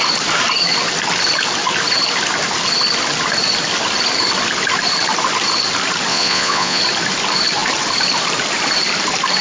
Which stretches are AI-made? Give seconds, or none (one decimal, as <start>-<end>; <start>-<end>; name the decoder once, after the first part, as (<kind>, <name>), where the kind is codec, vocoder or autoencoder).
6.1-6.8 (vocoder, Vocos)